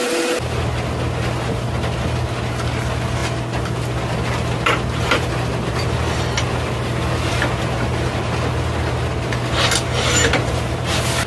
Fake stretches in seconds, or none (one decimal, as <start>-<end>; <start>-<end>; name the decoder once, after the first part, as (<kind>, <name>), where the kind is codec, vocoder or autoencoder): none

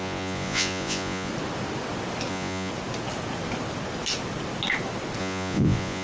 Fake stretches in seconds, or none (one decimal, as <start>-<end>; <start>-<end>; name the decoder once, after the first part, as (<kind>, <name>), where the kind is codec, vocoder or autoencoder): 0.0-1.3 (vocoder, Vocos); 2.3-2.7; 5.2-6.0

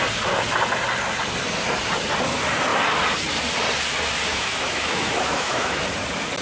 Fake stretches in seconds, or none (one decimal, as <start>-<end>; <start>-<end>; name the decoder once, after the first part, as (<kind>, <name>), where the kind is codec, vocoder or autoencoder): 4.3-5.8 (autoencoder, DAC-VAE)

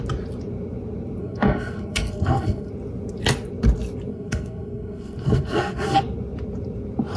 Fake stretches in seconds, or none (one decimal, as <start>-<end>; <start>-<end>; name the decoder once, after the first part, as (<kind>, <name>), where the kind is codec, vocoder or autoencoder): 1.2-2.7 (codec, SNAC); 4.1-6.0

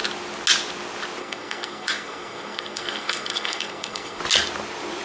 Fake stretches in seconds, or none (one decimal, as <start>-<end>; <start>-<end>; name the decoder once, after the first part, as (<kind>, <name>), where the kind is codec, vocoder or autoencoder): 1.2-4.2 (codec, SNAC)

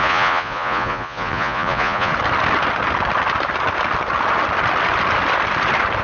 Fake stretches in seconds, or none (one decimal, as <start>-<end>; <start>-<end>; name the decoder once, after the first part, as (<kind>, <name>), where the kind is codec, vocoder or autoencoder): 0.0-2.1 (vocoder, Vocos)

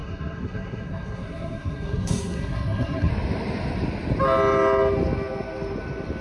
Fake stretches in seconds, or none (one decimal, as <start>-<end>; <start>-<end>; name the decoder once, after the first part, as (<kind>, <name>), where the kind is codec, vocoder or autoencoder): 0.0-3.1 (codec, SNAC)

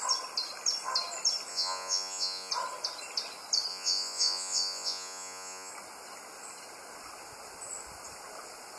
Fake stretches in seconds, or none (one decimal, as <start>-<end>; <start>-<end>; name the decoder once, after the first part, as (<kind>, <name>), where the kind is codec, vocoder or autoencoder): 1.5-2.5 (vocoder, Vocos); 3.7-5.7